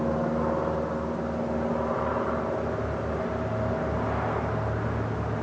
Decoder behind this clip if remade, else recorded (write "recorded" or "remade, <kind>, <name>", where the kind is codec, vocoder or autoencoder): recorded